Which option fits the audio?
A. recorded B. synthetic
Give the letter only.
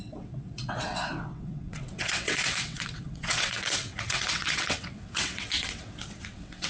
B